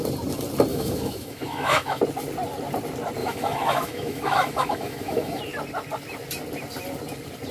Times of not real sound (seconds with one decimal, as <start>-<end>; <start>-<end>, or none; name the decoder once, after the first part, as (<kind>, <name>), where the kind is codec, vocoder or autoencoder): 0.7-2.0 (autoencoder, DAC-VAE); 3.2-5.4